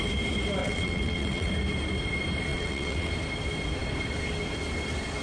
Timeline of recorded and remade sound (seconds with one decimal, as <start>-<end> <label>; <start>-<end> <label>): 0.0-0.6 recorded; 0.6-1.5 remade; 1.5-2.5 recorded; 2.5-3.1 remade; 3.1-5.2 recorded